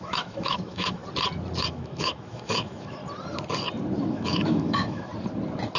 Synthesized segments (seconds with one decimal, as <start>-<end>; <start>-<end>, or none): 0.0-1.0; 1.7-3.0; 4.1-5.1